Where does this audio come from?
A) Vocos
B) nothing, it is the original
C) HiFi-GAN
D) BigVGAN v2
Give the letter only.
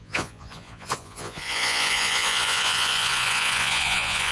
A